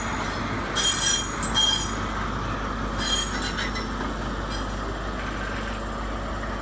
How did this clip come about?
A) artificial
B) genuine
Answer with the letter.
B